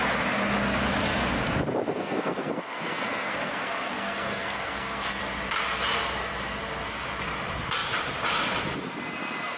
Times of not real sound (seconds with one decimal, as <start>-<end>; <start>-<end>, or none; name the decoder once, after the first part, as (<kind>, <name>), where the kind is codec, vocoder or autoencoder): 1.9-5.2 (codec, SNAC)